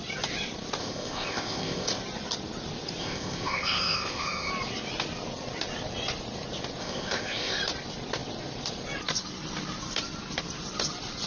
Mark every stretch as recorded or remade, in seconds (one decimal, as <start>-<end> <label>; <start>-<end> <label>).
0.0-0.8 recorded; 0.8-2.0 remade; 2.0-3.0 recorded; 3.0-4.5 remade; 4.5-6.8 recorded; 6.8-7.6 remade; 7.6-11.3 recorded